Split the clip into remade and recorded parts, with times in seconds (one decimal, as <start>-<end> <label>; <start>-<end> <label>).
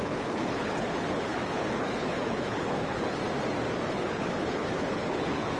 0.0-3.2 remade; 3.2-3.9 recorded; 3.9-5.6 remade